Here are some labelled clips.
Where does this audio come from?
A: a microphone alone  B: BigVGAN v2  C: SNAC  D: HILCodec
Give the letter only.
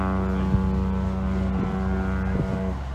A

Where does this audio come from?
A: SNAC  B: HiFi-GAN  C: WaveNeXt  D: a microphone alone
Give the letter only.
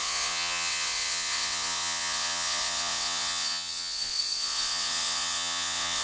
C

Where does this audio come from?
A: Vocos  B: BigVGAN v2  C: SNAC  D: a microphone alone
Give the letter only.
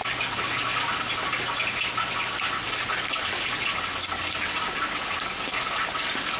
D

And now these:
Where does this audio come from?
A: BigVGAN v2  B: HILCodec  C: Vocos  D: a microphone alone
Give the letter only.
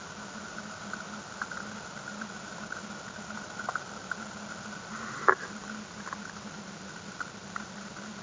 D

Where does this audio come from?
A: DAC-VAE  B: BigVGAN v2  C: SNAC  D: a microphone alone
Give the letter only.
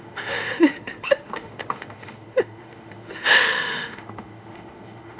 A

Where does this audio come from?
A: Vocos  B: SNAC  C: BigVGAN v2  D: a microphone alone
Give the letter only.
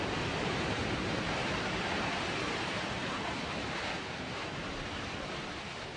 C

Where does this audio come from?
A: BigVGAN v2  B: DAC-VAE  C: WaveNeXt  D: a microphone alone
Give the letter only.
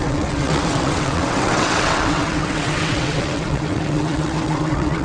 C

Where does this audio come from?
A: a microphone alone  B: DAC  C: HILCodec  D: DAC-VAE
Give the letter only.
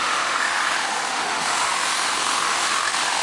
D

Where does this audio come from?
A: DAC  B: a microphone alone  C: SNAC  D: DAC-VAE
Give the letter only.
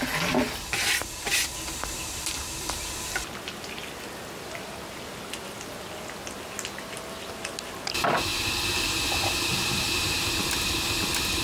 B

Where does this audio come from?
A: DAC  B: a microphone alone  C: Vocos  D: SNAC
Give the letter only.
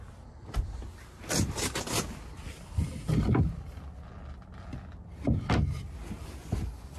B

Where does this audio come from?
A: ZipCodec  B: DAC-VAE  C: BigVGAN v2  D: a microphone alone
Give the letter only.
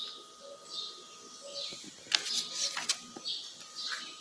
D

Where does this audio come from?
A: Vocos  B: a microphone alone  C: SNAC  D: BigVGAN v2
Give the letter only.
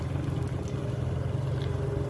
B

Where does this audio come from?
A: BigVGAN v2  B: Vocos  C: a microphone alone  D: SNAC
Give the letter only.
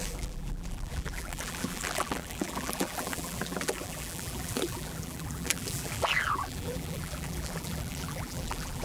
A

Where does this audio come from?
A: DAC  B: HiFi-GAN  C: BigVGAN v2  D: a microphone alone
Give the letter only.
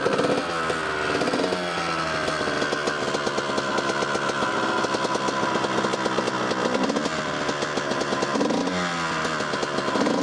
D